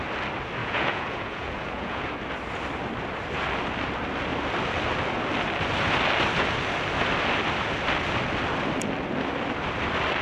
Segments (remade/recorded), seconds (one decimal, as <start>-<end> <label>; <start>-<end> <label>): 0.0-0.6 recorded; 0.6-2.0 remade; 2.0-10.2 recorded